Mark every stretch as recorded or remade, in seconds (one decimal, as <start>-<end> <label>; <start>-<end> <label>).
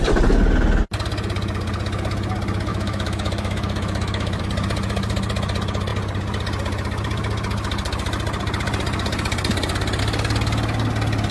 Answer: 0.0-2.7 recorded; 2.7-4.4 remade; 4.4-11.3 recorded